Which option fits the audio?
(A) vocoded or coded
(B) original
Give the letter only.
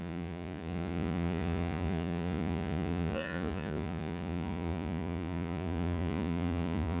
A